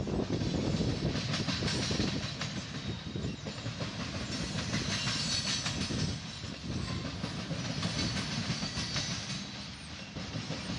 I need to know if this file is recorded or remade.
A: recorded